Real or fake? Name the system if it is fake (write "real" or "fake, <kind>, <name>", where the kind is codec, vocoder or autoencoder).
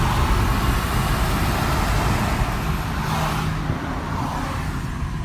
real